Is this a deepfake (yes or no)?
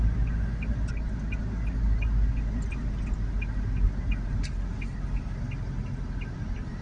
no